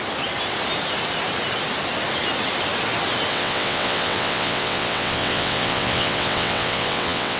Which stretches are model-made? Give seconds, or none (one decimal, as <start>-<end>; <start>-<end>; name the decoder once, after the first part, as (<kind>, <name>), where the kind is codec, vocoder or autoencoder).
3.3-7.4 (vocoder, WaveNeXt)

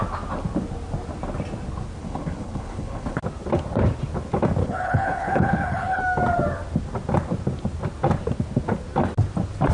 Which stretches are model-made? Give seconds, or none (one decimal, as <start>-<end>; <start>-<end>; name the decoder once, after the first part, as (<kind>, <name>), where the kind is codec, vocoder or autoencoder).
2.0-3.2 (codec, HILCodec); 4.6-6.0